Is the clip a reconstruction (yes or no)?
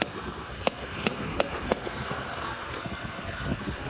yes